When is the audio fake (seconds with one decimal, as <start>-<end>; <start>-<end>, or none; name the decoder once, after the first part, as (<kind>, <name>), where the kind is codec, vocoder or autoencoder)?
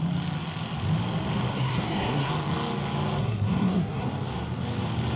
1.5-2.3 (codec, SNAC); 3.2-4.1